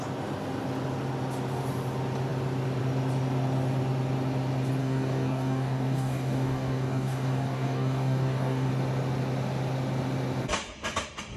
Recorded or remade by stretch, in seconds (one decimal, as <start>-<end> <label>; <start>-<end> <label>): 0.0-4.8 recorded; 4.8-8.7 remade; 8.7-11.4 recorded